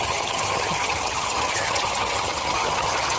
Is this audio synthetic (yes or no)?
yes